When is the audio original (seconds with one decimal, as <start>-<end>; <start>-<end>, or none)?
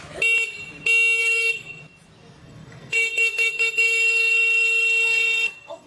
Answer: 0.0-1.2; 1.8-2.4